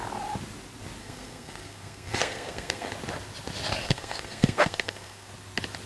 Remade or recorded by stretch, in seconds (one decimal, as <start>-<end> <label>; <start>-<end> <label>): 0.0-1.0 recorded; 1.0-2.9 remade; 2.9-3.8 recorded; 3.8-5.3 remade; 5.3-5.9 recorded